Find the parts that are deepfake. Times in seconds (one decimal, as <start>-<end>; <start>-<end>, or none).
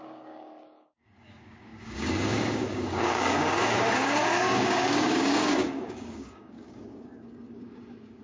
0.0-8.2